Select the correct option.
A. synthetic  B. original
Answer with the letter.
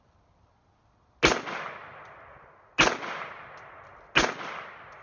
B